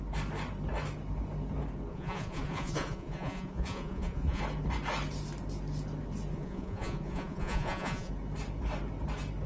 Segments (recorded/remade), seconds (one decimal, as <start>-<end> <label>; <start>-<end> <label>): 0.0-1.9 recorded; 1.9-4.4 remade; 4.4-6.3 recorded; 6.3-8.1 remade; 8.1-9.5 recorded